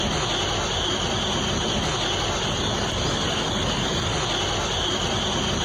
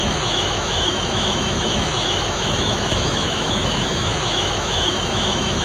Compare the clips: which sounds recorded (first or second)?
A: first